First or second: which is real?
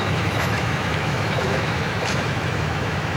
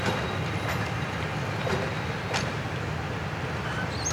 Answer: second